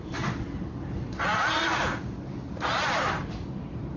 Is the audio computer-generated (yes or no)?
no